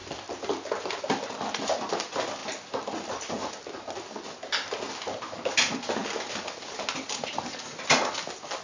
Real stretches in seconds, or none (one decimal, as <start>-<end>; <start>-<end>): 0.0-8.6